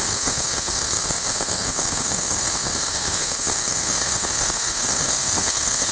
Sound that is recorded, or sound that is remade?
remade